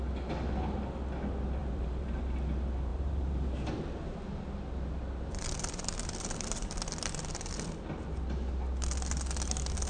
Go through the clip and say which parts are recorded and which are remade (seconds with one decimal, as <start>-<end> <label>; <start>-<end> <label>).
0.0-1.6 recorded; 1.6-2.2 remade; 2.2-2.9 recorded; 2.9-3.7 remade; 3.7-9.9 recorded